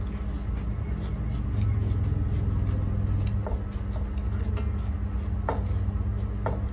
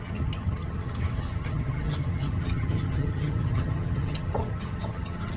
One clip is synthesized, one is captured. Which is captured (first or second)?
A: first